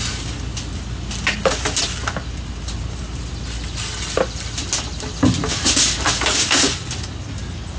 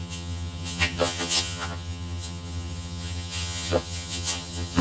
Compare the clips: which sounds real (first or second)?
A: first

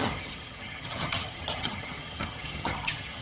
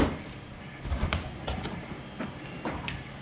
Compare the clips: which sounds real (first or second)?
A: second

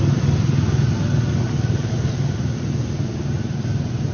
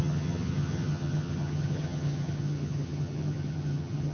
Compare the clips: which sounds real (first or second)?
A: first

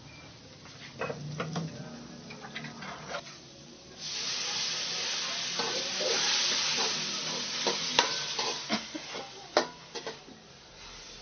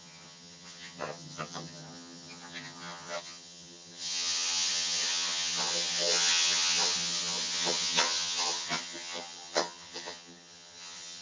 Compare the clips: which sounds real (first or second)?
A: first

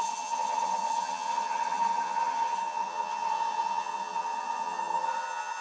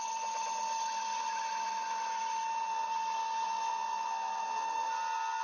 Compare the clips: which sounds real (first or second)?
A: second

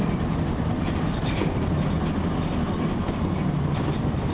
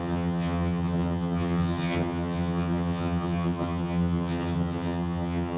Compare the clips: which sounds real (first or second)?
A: first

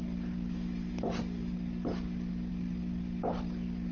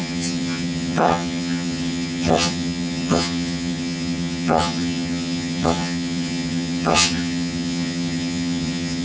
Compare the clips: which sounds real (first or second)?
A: first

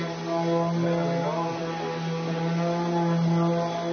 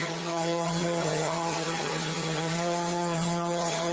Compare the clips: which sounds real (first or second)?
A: first